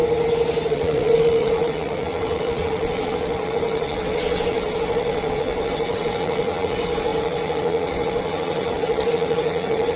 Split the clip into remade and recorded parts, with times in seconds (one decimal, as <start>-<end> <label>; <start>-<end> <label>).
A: 0.0-0.7 recorded; 0.7-10.0 remade